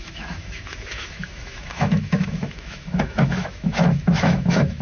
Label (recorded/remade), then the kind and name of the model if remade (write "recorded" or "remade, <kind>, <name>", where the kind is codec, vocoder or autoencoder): remade, autoencoder, DAC-VAE